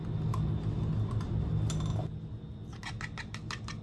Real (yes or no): yes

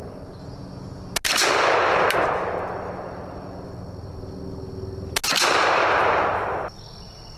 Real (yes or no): yes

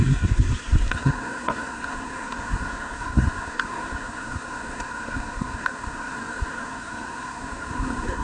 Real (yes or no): no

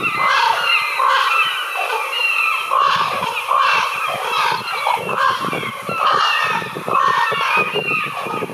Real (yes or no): no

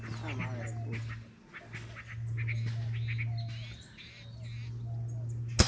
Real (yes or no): yes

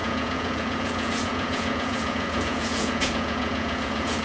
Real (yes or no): no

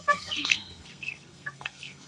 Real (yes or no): no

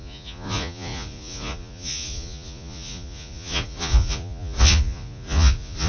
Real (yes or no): no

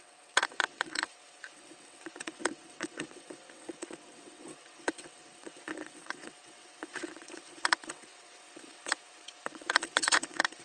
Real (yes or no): no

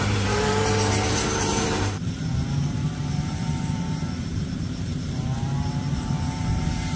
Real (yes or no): no